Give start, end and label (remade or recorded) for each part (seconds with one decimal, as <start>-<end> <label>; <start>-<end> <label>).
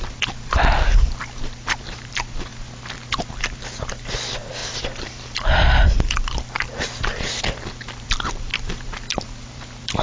0.0-2.5 remade; 2.5-3.9 recorded; 3.9-10.0 remade